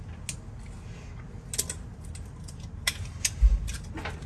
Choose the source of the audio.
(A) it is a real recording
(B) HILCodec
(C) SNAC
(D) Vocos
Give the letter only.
A